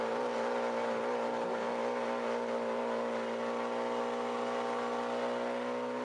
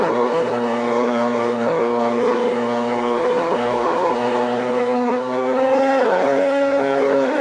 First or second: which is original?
first